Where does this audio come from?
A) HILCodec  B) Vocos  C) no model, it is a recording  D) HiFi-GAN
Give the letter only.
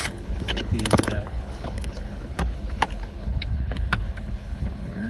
A